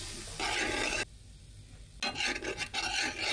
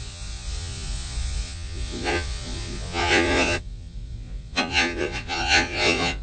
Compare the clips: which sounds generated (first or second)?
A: second